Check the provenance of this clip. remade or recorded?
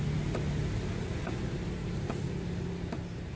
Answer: remade